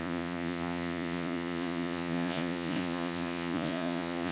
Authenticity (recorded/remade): remade